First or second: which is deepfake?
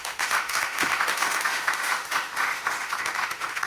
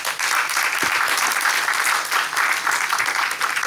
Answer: first